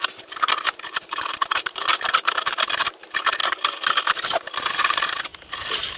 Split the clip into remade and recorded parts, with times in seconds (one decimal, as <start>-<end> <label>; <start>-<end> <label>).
0.0-3.4 remade; 3.4-4.8 recorded; 4.8-6.0 remade